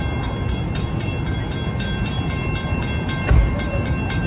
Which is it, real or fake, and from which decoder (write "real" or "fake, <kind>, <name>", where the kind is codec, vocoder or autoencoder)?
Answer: real